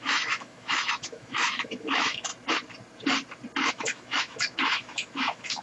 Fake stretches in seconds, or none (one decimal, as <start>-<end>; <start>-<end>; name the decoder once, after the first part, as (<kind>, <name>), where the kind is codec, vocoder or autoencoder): 0.0-2.3 (autoencoder, DAC-VAE); 3.7-5.6